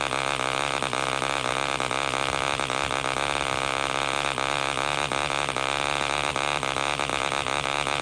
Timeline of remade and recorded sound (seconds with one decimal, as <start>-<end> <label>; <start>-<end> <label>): 0.0-8.0 recorded